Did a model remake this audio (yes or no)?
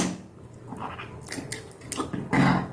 no